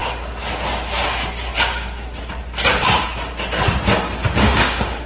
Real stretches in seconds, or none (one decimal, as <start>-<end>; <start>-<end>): 0.0-4.4